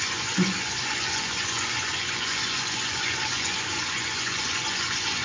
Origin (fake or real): fake